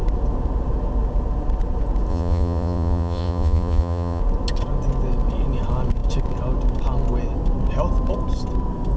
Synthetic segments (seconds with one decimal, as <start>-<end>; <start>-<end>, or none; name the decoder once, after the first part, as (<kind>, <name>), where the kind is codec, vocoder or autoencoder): 2.1-4.2 (vocoder, Vocos)